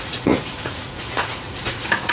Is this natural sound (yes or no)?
no